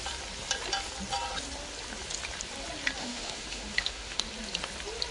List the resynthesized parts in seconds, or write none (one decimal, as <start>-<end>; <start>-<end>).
3.0-4.2